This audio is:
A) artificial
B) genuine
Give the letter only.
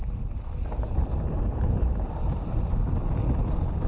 B